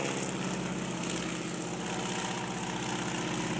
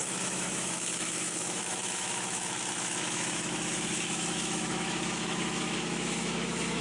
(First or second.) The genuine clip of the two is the first